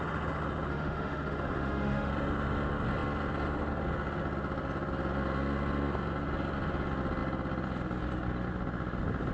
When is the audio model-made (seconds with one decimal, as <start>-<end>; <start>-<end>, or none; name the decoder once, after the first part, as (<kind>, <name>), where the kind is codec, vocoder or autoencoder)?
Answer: 0.7-2.1 (autoencoder, DAC-VAE)